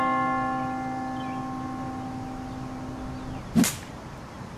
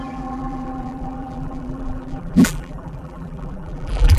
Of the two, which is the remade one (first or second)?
second